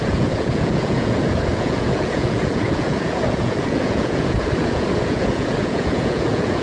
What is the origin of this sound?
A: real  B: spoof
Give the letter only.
B